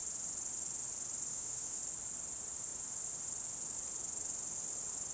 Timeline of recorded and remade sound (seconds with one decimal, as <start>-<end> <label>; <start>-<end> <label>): 0.0-1.3 recorded; 1.3-1.8 remade; 1.8-5.1 recorded